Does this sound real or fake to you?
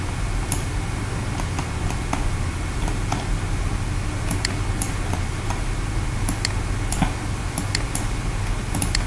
real